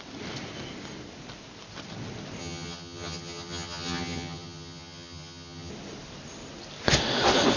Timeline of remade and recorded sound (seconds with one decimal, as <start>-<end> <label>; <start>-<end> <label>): 0.0-2.4 recorded; 2.4-5.7 remade; 5.7-7.6 recorded